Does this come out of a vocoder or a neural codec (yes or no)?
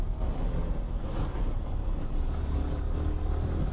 no